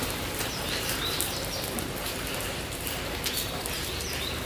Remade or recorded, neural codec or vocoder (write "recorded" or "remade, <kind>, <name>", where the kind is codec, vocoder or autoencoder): remade, vocoder, BigVGAN v2